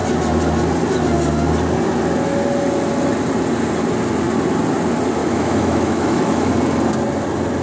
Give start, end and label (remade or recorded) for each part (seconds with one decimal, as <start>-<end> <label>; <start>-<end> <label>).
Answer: 0.0-5.2 recorded; 5.2-6.5 remade; 6.5-7.6 recorded